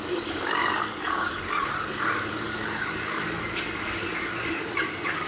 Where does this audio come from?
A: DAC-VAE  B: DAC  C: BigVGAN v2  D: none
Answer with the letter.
B